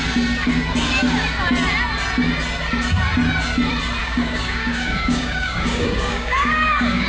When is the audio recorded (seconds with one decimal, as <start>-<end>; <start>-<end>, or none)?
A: 0.0-4.0